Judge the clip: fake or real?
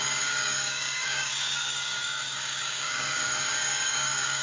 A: fake